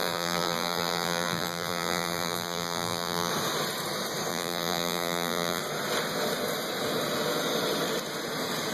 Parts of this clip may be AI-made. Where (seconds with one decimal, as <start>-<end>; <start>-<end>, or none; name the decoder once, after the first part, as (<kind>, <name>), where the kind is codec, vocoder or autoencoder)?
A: 0.0-3.3 (vocoder, BigVGAN v2); 4.3-5.6